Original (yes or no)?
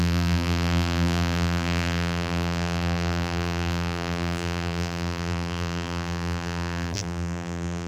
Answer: no